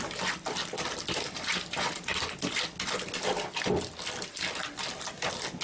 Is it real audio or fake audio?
real